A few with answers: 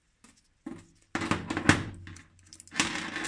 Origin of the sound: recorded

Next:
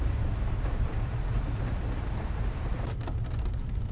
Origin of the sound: recorded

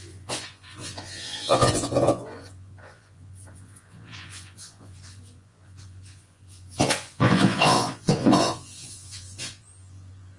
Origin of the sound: remade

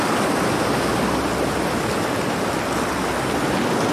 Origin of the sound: recorded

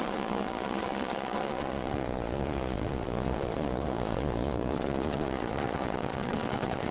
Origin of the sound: remade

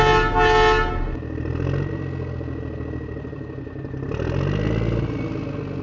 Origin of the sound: recorded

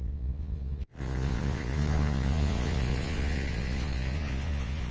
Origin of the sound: remade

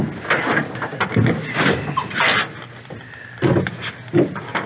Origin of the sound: recorded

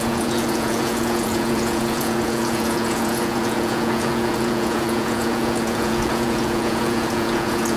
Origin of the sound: remade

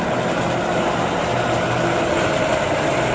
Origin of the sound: recorded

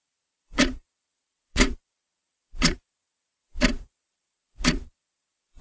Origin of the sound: remade